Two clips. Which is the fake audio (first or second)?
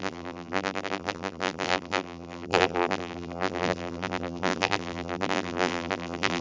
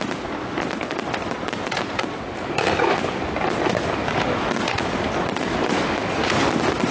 first